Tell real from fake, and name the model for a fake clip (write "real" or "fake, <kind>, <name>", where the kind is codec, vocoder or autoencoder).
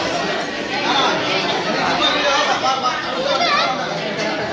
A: real